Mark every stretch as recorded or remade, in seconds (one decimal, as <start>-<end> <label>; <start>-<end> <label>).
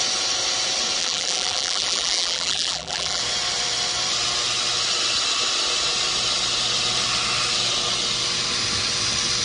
0.0-1.0 recorded; 1.0-3.2 remade; 3.2-9.4 recorded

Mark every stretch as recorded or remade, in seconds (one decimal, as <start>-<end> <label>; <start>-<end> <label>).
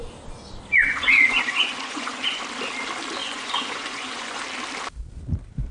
0.0-0.8 recorded; 0.8-2.4 remade; 2.4-3.2 recorded; 3.2-4.4 remade; 4.4-5.7 recorded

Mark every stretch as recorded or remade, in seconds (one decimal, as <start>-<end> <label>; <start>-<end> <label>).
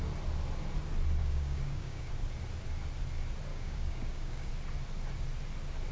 0.0-1.2 recorded; 1.2-2.1 remade; 2.1-3.5 recorded; 3.5-4.5 remade; 4.5-5.9 recorded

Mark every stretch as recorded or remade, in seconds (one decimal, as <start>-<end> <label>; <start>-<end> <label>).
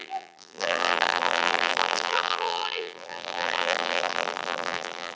0.0-5.2 remade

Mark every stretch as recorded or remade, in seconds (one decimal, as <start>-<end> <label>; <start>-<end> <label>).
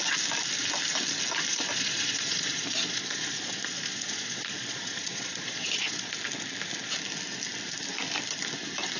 0.0-1.5 recorded; 1.5-6.1 remade; 6.1-9.0 recorded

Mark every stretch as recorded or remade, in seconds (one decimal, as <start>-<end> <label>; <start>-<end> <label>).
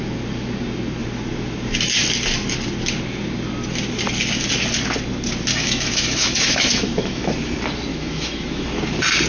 0.0-5.5 recorded; 5.5-7.3 remade; 7.3-7.9 recorded; 7.9-8.7 remade; 8.7-9.3 recorded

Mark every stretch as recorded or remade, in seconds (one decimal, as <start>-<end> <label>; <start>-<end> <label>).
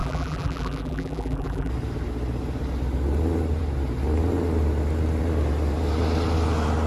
0.0-1.7 remade; 1.7-6.9 recorded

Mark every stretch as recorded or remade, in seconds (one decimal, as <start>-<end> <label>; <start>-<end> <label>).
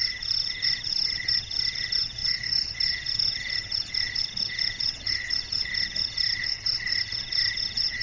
0.0-8.0 recorded